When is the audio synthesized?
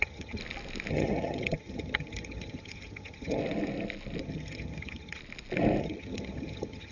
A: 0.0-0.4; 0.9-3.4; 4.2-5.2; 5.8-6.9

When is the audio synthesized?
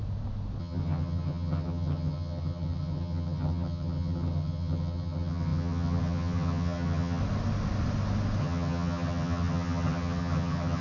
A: 0.6-7.2; 8.4-10.8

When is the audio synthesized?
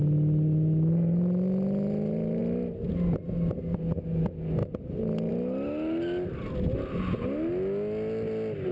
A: none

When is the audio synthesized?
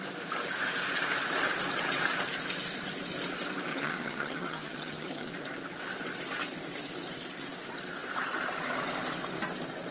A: 3.7-5.3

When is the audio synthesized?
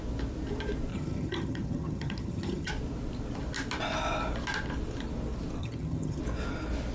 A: 0.9-2.7; 5.6-6.2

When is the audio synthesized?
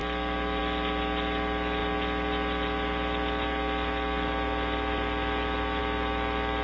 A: none